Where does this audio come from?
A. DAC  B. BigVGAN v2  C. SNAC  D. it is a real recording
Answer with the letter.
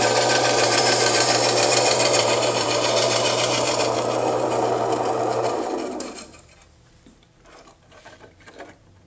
B